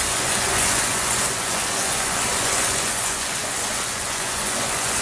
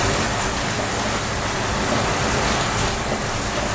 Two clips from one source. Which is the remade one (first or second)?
first